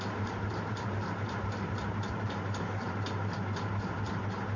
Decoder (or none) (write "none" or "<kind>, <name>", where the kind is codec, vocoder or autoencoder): vocoder, BigVGAN v2